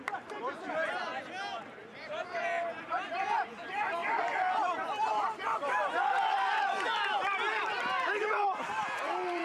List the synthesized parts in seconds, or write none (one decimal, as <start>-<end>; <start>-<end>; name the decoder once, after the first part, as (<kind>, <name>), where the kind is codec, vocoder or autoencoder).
0.0-1.1 (vocoder, BigVGAN v2); 1.9-9.4